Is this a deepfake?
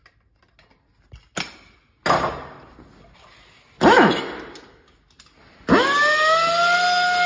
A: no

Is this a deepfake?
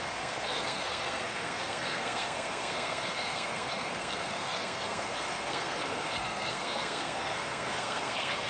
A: yes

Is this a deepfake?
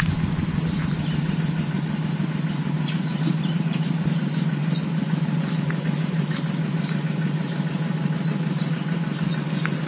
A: no